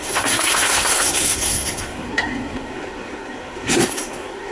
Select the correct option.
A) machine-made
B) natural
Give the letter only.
A